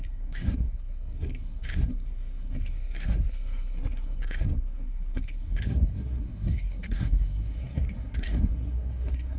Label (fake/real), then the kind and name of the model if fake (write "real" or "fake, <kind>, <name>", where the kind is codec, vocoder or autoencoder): fake, codec, SNAC